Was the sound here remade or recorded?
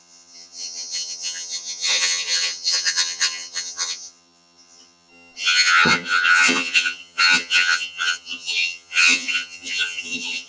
remade